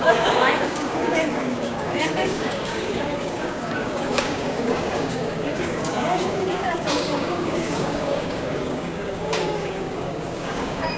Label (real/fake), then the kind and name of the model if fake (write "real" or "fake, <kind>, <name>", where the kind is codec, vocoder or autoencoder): fake, codec, DAC